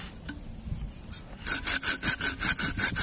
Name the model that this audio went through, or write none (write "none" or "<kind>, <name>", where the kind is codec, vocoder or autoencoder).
none